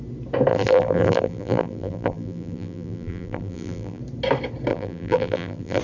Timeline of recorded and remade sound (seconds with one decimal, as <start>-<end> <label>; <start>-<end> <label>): 0.0-0.5 recorded; 0.5-4.0 remade; 4.0-4.7 recorded; 4.7-5.8 remade